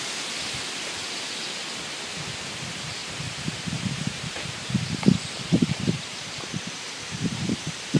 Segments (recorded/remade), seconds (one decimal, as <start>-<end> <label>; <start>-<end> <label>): 0.0-3.0 recorded; 3.0-8.0 remade